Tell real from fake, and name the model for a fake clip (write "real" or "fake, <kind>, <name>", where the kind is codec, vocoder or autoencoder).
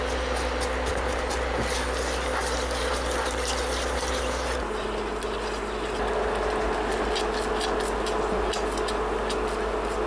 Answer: real